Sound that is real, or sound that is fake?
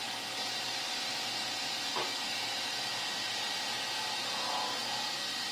real